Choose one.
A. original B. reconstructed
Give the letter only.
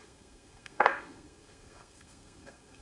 B